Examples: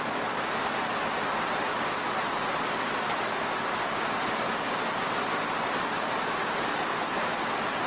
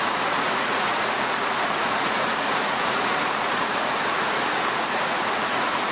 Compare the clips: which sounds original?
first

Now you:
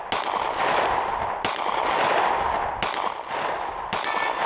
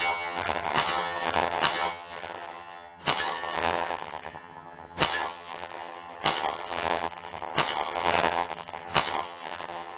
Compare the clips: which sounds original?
first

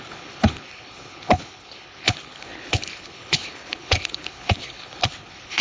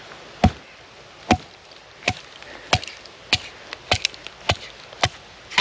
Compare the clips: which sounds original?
second